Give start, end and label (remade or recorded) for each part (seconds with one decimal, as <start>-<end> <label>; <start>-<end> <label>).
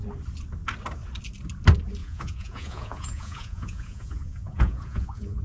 0.0-2.0 recorded; 2.0-5.4 remade